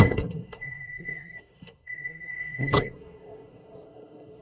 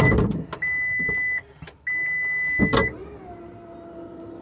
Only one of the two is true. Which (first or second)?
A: second